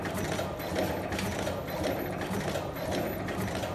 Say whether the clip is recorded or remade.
recorded